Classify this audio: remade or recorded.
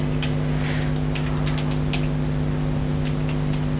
recorded